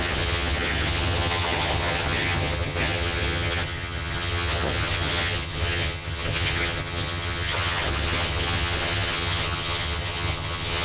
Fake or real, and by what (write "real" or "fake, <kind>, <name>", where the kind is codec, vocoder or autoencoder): fake, vocoder, HiFi-GAN